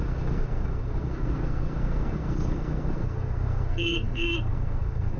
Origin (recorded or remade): remade